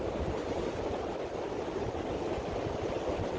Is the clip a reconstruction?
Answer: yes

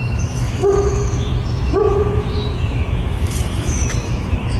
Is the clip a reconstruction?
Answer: yes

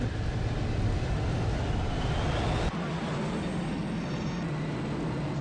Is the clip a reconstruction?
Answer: no